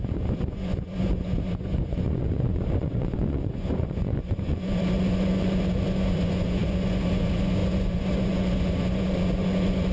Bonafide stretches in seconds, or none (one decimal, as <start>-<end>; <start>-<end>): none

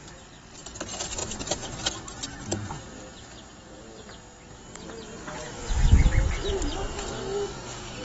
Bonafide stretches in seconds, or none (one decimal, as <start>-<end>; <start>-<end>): 0.0-8.0

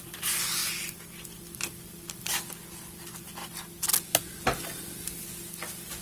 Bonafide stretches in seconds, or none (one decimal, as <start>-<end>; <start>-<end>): 3.4-4.4

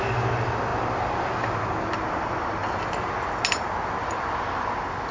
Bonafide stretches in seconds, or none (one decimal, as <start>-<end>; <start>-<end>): 0.0-5.1

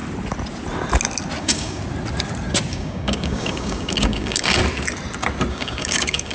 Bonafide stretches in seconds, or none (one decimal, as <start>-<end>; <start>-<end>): 0.0-1.4; 1.8-2.7; 4.6-5.5

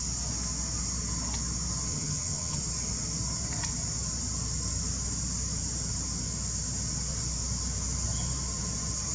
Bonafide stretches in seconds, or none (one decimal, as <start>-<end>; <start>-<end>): 0.0-1.9; 2.6-9.1